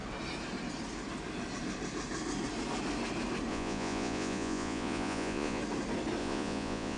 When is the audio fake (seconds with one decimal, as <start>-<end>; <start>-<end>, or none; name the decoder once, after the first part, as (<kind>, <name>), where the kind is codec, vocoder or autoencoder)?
3.5-5.6 (vocoder, Vocos); 6.2-7.0